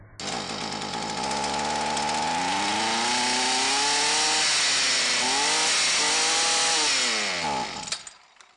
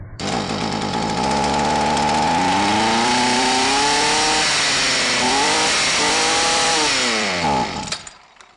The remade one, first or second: second